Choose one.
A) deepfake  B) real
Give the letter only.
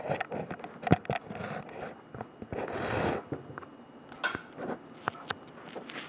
B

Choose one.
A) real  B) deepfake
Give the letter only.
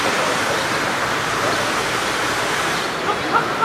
B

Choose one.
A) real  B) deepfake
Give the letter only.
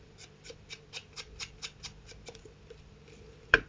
B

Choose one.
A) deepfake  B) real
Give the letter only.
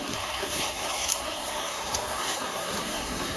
A